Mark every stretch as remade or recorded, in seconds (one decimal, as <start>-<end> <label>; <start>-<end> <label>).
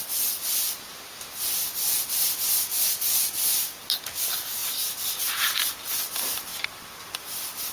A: 0.0-7.7 recorded